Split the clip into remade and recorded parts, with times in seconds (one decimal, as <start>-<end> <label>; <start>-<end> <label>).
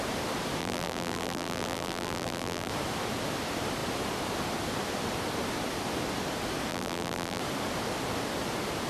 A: 0.0-0.6 recorded; 0.6-2.7 remade; 2.7-6.7 recorded; 6.7-7.4 remade; 7.4-8.9 recorded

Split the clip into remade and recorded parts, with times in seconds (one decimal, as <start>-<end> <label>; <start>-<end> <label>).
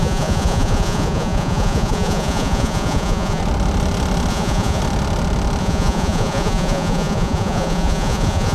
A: 0.0-3.4 remade; 3.4-4.3 recorded; 4.3-4.8 remade; 4.8-5.6 recorded; 5.6-8.5 remade